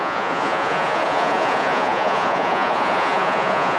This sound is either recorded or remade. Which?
remade